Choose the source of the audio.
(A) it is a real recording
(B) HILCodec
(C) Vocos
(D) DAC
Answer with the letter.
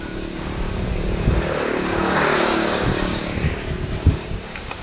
D